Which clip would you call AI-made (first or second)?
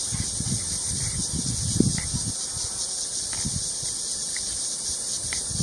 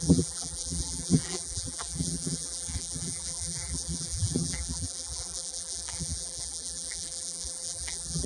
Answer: second